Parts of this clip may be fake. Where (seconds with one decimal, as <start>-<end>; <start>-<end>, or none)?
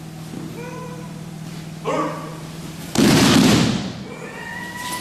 2.3-4.6